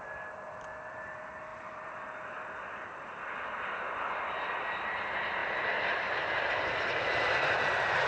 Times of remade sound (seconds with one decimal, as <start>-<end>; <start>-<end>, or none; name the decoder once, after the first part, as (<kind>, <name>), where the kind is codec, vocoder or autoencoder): 0.0-8.1 (vocoder, BigVGAN v2)